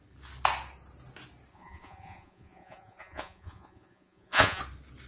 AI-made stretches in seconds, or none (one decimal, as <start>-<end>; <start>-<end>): 1.5-4.6